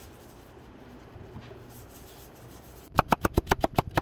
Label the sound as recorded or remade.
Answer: remade